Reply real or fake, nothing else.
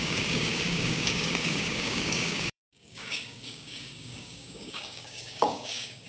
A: fake